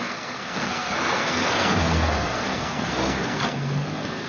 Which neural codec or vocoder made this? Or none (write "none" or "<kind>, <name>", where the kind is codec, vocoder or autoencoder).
codec, SNAC